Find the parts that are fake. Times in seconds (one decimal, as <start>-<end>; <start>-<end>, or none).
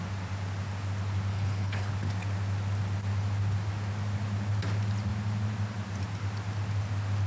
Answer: 1.3-1.9